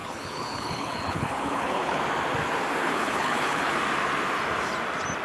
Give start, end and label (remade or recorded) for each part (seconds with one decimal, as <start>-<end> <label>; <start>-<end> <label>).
0.0-2.0 remade; 2.0-2.8 recorded; 2.8-3.7 remade; 3.7-5.2 recorded

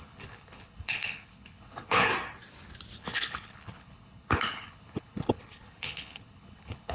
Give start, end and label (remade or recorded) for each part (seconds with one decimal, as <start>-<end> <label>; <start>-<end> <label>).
0.0-2.1 remade; 2.1-3.0 recorded; 3.0-6.9 remade